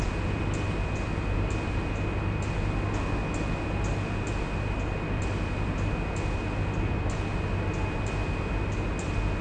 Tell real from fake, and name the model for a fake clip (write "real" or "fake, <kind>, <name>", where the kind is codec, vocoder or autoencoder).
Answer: real